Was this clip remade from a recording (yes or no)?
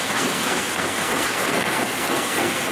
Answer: yes